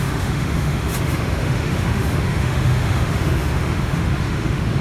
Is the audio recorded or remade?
remade